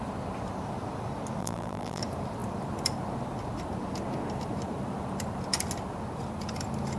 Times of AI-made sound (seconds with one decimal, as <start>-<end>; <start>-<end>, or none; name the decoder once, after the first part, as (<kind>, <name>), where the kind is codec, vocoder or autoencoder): 1.4-2.0 (vocoder, BigVGAN v2)